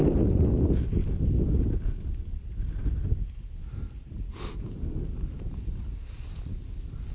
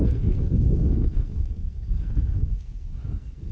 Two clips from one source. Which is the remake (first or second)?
second